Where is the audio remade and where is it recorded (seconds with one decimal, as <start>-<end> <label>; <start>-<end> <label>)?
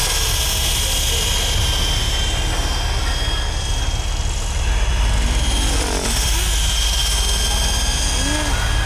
0.0-3.5 recorded; 3.5-7.0 remade; 7.0-8.5 recorded; 8.5-8.9 remade